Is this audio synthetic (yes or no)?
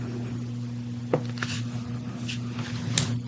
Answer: no